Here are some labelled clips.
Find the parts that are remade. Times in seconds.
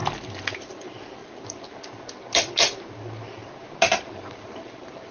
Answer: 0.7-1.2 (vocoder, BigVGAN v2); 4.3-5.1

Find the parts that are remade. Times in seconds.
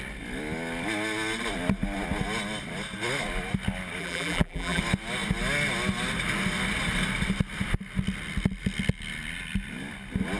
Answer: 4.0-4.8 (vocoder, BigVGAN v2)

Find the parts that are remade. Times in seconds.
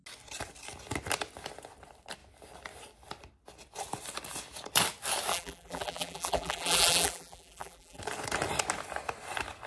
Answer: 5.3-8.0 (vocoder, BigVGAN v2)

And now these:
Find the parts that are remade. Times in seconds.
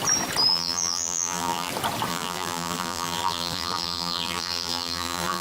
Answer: 0.5-1.7 (vocoder, BigVGAN v2); 2.1-5.4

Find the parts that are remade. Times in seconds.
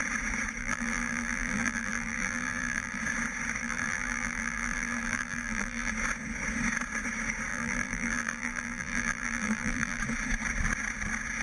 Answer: 0.6-3.0 (vocoder, BigVGAN v2); 3.6-5.9; 7.5-10.0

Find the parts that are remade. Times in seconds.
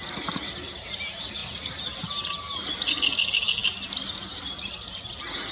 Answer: 1.4-2.7 (vocoder, BigVGAN v2)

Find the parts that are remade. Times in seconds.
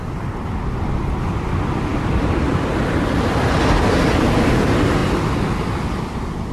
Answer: 1.9-2.8 (vocoder, BigVGAN v2)